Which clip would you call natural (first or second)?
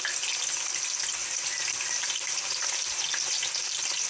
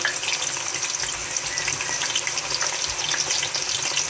second